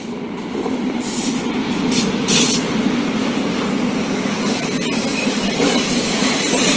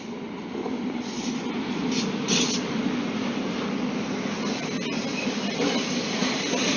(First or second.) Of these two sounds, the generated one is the first